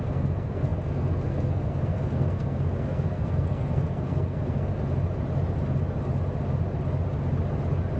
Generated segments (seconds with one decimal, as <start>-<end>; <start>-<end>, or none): 0.0-4.7